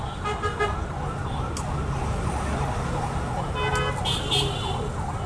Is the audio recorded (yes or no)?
yes